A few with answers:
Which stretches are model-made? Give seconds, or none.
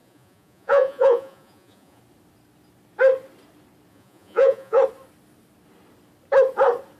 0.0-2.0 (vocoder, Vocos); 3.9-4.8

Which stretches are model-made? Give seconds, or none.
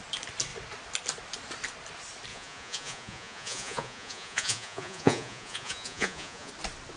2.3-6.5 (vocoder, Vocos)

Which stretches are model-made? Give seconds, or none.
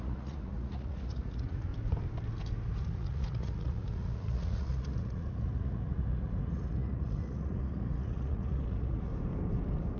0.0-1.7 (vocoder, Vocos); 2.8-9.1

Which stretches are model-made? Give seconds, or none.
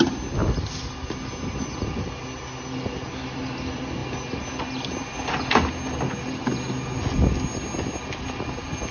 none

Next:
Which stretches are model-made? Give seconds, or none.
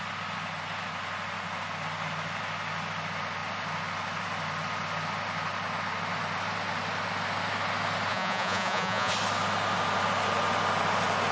8.1-9.1 (vocoder, Vocos)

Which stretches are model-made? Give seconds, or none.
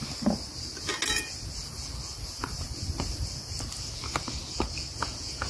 4.9-5.5 (vocoder, Vocos)